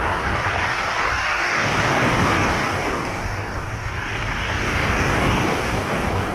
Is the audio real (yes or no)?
no